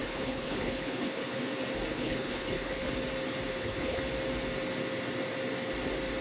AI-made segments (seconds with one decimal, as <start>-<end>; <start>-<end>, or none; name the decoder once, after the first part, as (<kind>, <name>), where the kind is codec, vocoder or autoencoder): 0.0-1.4 (codec, HILCodec); 1.9-2.9; 3.5-4.0